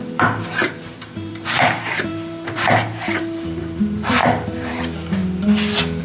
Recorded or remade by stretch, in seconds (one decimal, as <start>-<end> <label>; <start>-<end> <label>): 0.0-5.2 remade; 5.2-6.0 recorded